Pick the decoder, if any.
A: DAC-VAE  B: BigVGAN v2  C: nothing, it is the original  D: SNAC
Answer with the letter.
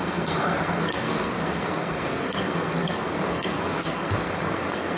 D